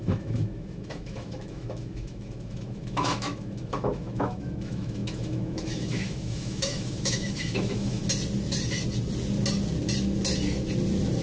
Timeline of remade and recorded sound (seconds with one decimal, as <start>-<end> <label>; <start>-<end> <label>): 0.0-8.0 remade; 8.0-11.2 recorded